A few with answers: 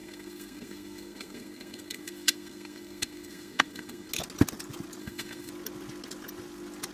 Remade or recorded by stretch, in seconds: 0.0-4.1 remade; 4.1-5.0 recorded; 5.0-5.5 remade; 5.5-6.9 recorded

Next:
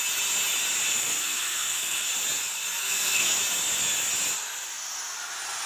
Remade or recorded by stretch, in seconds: 0.0-0.9 recorded; 0.9-2.1 remade; 2.1-2.8 recorded; 2.8-3.4 remade; 3.4-5.7 recorded

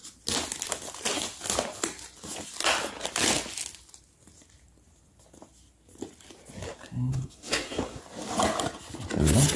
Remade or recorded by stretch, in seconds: 0.0-7.1 recorded; 7.1-8.0 remade; 8.0-9.6 recorded

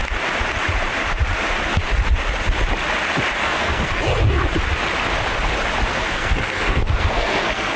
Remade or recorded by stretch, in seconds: 0.0-3.4 recorded; 3.4-4.0 remade; 4.0-5.9 recorded; 5.9-7.8 remade

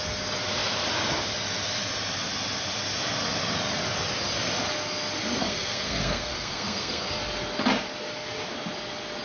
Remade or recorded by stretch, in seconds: 0.0-5.4 recorded; 5.4-7.1 remade; 7.1-9.2 recorded